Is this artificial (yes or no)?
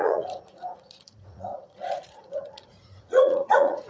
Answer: yes